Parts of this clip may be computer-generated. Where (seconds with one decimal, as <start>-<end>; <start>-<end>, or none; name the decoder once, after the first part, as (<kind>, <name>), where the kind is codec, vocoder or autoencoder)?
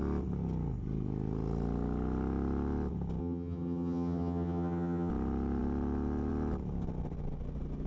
3.2-5.1 (vocoder, HiFi-GAN)